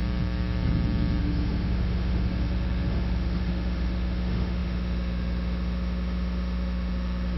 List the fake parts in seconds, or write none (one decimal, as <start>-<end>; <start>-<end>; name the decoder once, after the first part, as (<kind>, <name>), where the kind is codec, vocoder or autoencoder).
1.2-7.4 (autoencoder, DAC-VAE)